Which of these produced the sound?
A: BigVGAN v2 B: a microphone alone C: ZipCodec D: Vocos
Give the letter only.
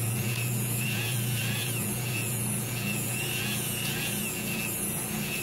D